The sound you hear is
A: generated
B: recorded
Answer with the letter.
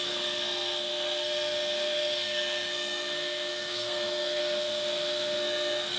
A